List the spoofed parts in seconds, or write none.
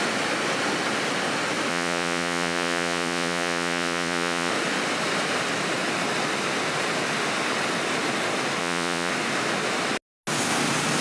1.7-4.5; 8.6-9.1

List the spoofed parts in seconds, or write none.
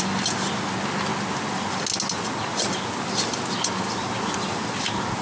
none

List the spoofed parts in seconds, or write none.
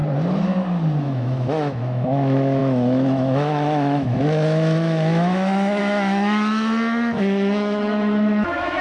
1.0-8.8